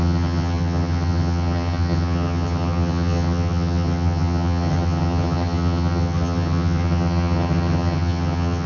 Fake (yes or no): yes